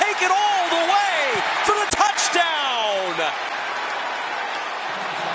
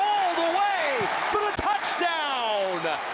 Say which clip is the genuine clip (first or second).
first